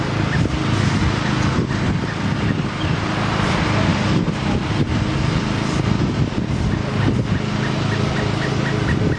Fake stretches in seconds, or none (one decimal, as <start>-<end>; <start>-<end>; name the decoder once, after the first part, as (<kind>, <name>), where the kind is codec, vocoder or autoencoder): none